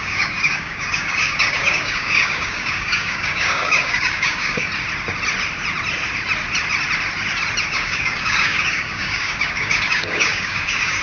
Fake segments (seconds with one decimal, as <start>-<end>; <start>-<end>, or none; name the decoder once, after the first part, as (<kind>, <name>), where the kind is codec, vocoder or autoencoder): 0.0-4.7 (codec, DAC); 7.7-11.0

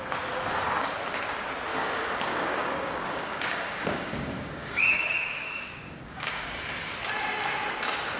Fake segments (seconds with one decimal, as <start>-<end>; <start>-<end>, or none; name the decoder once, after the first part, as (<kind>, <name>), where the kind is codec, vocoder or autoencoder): 1.7-6.6 (codec, DAC)

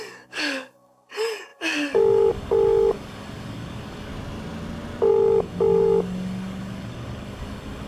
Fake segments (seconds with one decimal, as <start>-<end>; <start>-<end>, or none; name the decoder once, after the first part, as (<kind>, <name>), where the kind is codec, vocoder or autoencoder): 0.0-4.1 (codec, DAC); 5.1-7.9

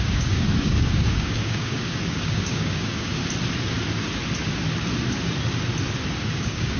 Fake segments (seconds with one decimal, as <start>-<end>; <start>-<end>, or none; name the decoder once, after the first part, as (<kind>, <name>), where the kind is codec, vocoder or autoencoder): 0.0-3.2 (codec, DAC); 6.3-6.8